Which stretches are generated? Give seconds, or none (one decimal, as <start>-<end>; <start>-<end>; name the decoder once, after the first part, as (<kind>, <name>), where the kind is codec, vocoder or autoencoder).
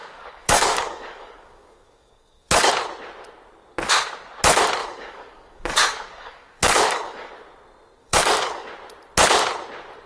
0.0-2.7 (codec, DAC); 4.8-7.3; 8.0-8.7